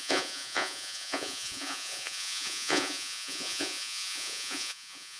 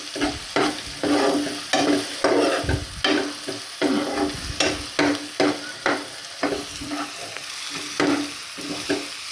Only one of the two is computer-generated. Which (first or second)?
first